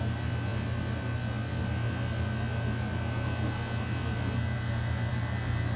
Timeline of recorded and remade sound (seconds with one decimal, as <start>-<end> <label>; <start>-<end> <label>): 0.0-5.8 recorded